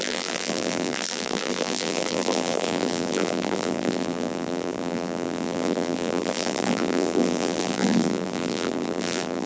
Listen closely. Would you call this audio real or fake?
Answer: fake